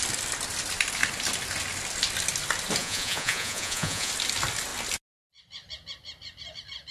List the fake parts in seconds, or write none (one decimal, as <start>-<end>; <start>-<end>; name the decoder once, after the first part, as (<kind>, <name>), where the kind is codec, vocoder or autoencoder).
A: 2.8-4.1 (vocoder, Vocos)